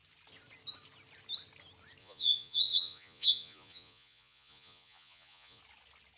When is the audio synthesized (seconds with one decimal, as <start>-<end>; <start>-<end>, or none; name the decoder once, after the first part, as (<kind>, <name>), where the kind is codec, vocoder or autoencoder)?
2.0-5.6 (vocoder, Vocos)